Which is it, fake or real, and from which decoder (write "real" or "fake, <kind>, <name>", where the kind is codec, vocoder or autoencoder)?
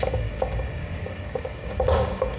fake, codec, DAC